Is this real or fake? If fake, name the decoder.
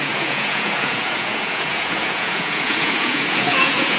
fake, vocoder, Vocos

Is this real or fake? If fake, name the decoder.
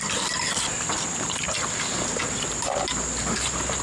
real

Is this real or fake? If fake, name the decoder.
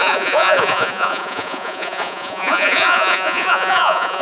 fake, vocoder, Vocos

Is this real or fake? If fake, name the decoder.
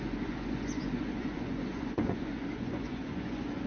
fake, vocoder, Vocos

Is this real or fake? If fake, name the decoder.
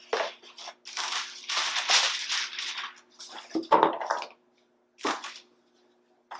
real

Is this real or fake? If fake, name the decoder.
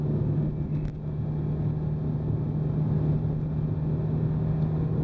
real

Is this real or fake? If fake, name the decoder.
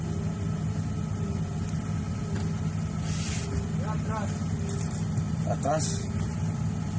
real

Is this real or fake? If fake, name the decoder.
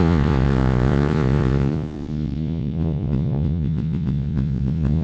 fake, vocoder, Vocos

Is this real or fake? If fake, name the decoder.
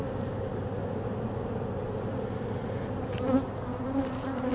real